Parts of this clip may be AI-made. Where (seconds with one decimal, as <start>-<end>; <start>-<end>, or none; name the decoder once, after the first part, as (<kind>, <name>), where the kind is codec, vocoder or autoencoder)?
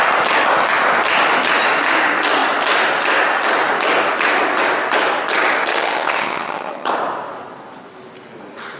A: 5.7-6.9 (vocoder, HiFi-GAN)